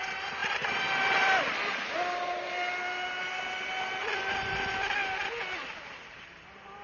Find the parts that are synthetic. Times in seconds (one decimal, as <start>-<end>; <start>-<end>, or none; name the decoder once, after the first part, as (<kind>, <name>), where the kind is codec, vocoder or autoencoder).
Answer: 0.4-1.8 (vocoder, BigVGAN v2)